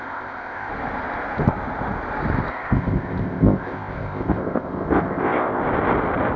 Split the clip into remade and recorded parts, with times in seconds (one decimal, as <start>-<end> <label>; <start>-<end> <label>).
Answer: 0.0-0.7 remade; 0.7-2.5 recorded; 2.5-5.6 remade; 5.6-6.4 recorded